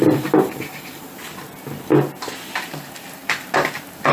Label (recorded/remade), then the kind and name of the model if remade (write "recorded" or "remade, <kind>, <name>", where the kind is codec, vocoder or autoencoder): recorded